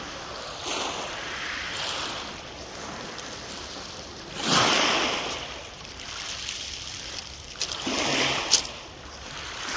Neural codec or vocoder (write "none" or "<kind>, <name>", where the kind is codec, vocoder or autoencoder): vocoder, BigVGAN v2